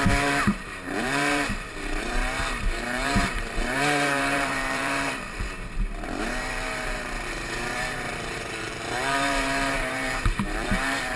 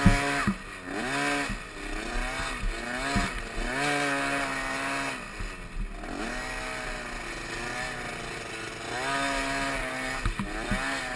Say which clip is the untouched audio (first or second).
second